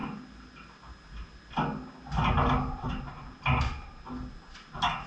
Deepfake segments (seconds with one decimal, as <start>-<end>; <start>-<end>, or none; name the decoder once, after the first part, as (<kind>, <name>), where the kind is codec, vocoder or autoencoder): none